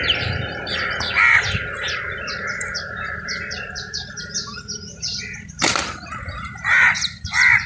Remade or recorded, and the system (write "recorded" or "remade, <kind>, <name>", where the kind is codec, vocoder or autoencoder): remade, vocoder, BigVGAN v2